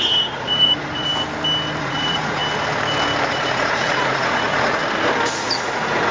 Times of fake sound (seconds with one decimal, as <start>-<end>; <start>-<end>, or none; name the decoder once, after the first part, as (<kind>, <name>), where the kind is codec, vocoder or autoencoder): 0.0-1.1 (vocoder, Vocos); 1.8-2.4; 3.3-4.8; 5.3-6.1